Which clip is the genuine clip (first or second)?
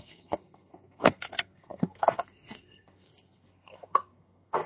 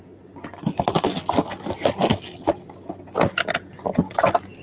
second